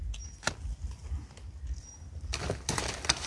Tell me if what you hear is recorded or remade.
recorded